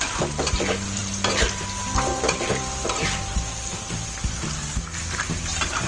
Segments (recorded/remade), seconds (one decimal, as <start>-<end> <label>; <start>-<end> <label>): 0.0-5.9 recorded